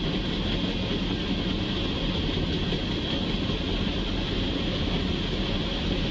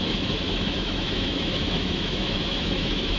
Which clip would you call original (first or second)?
first